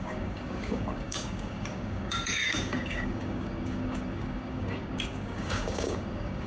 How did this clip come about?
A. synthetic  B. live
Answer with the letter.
A